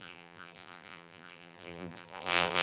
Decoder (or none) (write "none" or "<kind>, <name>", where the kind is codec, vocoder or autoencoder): vocoder, BigVGAN v2